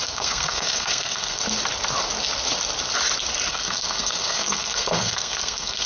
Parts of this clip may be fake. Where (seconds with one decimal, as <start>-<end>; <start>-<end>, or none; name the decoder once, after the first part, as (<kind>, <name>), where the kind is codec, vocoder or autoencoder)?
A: 0.0-1.4 (codec, SNAC); 3.5-5.9